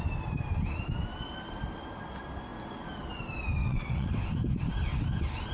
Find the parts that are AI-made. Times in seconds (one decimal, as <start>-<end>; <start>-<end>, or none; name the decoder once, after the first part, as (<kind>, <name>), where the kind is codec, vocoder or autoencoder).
3.6-4.1 (vocoder, WaveNeXt)